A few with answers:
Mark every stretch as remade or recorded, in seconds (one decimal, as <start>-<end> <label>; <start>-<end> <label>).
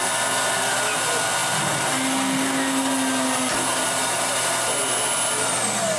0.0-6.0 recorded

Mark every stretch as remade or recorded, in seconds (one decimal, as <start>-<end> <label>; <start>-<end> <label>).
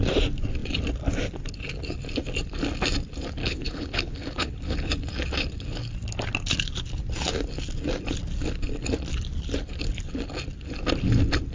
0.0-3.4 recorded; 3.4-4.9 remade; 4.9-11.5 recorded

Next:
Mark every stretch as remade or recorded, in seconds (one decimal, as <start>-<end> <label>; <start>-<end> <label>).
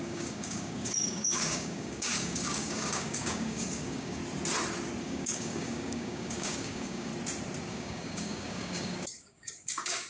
0.0-4.2 remade; 4.2-5.0 recorded; 5.0-7.1 remade; 7.1-7.7 recorded; 7.7-10.1 remade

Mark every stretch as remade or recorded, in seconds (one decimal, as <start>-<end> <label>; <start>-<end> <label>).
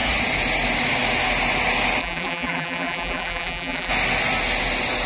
0.0-2.0 recorded; 2.0-3.9 remade; 3.9-5.1 recorded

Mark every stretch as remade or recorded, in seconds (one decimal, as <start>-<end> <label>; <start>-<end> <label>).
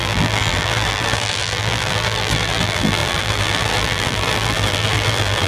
0.0-5.5 remade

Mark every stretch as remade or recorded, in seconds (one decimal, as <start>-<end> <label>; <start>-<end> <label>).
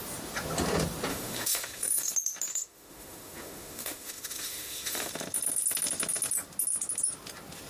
0.0-1.1 recorded; 1.1-2.1 remade; 2.1-2.5 recorded; 2.5-5.1 remade; 5.1-7.7 recorded